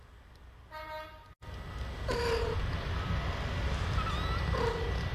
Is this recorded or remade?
recorded